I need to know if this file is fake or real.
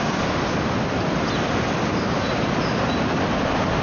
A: real